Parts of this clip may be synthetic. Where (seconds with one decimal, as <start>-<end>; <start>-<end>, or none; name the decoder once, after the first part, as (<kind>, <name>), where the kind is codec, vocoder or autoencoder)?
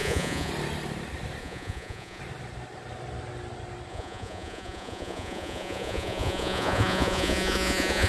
0.0-0.5 (vocoder, Vocos); 1.4-2.2; 3.9-8.1